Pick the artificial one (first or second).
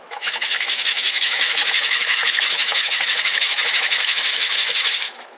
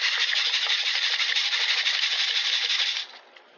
first